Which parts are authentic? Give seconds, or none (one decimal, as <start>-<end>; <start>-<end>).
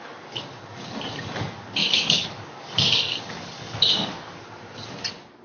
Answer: 0.0-1.8; 4.4-5.4